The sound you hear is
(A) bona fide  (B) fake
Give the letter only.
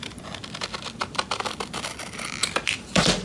B